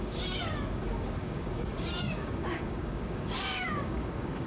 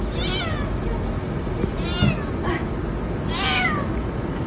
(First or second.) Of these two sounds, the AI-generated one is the first